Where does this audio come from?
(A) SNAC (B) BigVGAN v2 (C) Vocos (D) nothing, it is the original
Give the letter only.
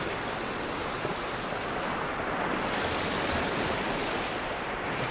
D